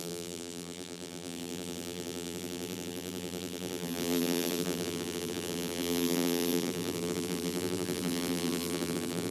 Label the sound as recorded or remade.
remade